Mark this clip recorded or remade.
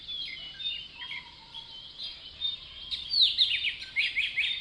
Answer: recorded